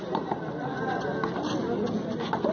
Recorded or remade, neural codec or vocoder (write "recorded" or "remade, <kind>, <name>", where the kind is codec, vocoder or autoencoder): recorded